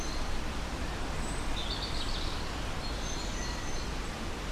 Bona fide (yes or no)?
yes